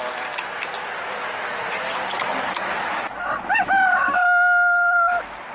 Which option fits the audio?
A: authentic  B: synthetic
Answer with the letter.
A